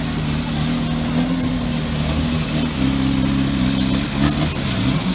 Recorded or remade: recorded